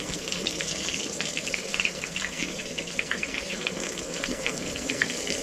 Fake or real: fake